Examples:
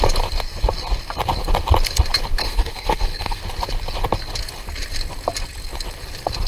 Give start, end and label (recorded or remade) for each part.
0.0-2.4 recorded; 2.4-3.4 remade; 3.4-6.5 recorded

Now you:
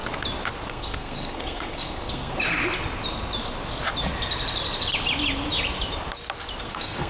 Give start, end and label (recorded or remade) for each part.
0.0-0.7 recorded; 0.7-2.3 remade; 2.3-6.6 recorded; 6.6-7.1 remade

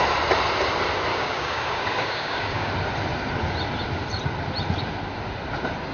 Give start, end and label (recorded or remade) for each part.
0.0-1.1 recorded; 1.1-2.7 remade; 2.7-5.9 recorded

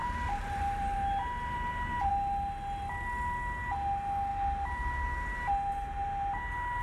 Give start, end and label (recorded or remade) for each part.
0.0-2.1 remade; 2.1-6.8 recorded

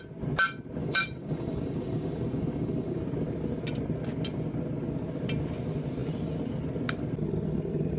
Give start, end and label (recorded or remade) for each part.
0.0-0.8 recorded; 0.8-3.0 remade; 3.0-8.0 recorded

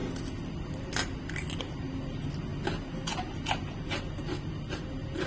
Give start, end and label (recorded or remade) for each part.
0.0-5.3 recorded